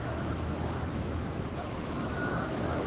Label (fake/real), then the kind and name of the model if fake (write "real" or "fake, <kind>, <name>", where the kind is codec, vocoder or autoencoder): fake, autoencoder, DAC-VAE